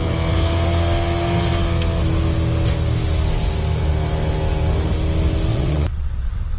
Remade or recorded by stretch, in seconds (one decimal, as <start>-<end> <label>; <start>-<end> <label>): 0.0-5.5 recorded; 5.5-6.6 remade

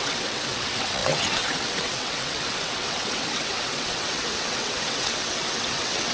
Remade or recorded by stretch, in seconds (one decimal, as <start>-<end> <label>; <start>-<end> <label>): 0.0-6.1 remade